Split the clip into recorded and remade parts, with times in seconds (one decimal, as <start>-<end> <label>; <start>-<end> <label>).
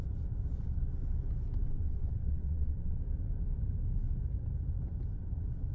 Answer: 0.0-1.6 recorded; 1.6-3.0 remade; 3.0-5.7 recorded